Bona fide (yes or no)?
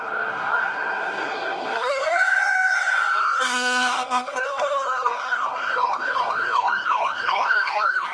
no